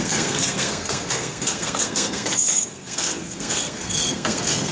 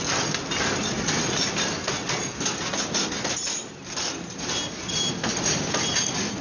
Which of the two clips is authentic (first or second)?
second